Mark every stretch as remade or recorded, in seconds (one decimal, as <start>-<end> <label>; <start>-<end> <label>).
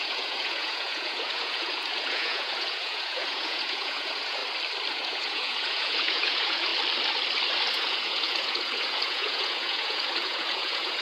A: 0.0-4.4 remade; 4.4-4.9 recorded; 4.9-6.7 remade; 6.7-7.7 recorded; 7.7-11.0 remade